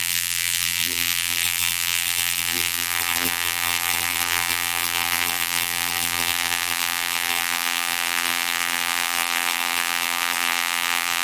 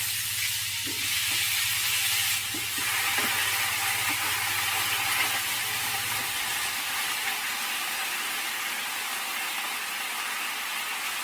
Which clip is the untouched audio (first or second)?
second